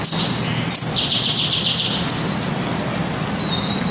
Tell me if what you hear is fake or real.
real